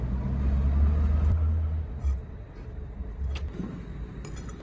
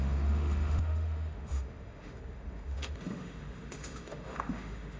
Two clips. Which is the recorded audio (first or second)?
first